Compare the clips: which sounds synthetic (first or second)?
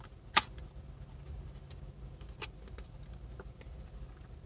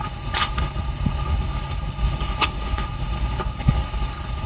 second